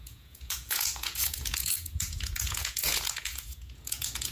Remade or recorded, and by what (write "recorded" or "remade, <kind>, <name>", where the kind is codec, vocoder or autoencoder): remade, vocoder, Vocos